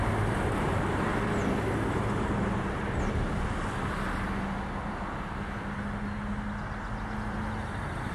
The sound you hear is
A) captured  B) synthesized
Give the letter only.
A